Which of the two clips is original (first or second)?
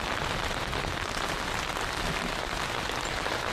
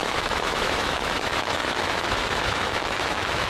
first